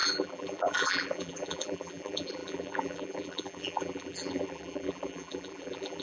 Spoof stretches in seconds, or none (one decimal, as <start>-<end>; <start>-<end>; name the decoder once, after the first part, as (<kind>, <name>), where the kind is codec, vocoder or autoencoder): 0.0-6.0 (vocoder, BigVGAN v2)